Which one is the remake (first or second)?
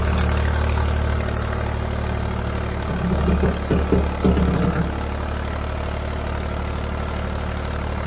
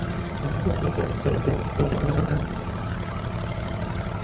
second